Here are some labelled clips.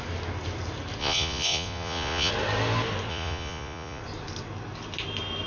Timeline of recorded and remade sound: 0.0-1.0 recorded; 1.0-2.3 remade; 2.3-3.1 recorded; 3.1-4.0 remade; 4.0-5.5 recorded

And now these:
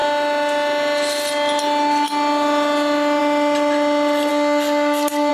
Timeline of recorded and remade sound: 0.0-4.3 recorded; 4.3-5.3 remade

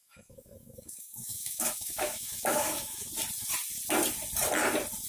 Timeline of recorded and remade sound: 0.0-3.1 remade; 3.1-5.1 recorded

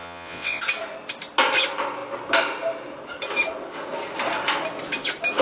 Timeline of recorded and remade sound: 0.0-0.6 remade; 0.6-5.4 recorded

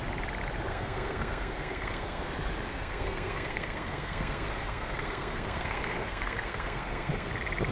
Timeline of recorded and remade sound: 0.0-0.7 recorded; 0.7-2.3 remade; 2.3-2.7 recorded; 2.7-7.3 remade; 7.3-7.7 recorded